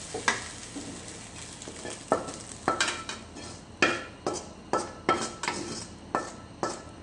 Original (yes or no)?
yes